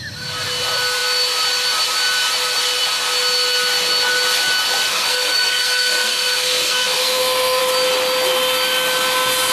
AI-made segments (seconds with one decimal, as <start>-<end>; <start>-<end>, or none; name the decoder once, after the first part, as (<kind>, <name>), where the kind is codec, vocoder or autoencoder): 4.9-7.6 (codec, SNAC)